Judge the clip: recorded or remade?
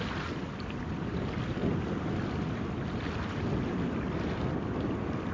recorded